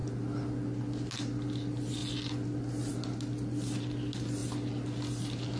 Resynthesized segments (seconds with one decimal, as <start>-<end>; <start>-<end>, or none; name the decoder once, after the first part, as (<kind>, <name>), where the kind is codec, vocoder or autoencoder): none